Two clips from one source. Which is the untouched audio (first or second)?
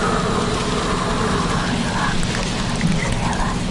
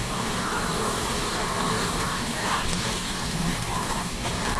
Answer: first